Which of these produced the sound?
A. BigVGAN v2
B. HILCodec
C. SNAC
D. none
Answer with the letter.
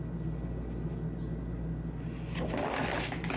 D